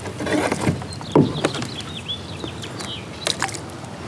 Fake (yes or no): no